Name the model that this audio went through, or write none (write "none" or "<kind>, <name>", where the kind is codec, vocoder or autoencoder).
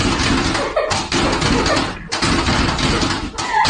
none